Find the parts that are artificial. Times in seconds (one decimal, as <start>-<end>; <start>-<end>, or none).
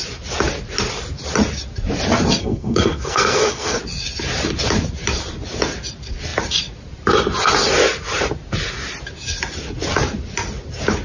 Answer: 2.4-3.8